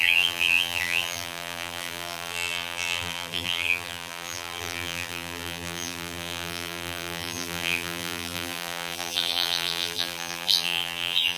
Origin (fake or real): fake